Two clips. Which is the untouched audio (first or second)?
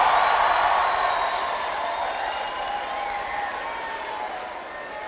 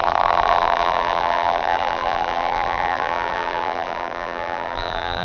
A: first